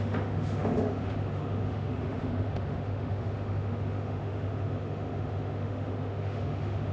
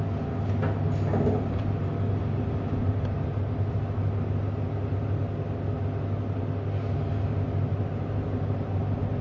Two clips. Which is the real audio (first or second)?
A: second